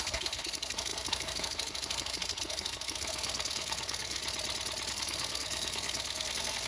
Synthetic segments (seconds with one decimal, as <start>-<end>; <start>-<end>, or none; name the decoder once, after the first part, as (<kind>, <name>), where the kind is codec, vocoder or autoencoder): 0.0-4.2 (codec, SNAC); 4.9-6.7